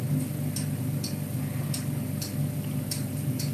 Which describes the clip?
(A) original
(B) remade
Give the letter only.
A